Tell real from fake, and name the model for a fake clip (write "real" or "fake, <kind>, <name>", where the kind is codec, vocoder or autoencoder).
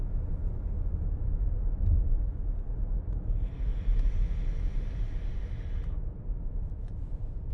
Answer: real